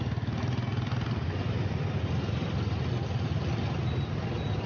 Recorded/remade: recorded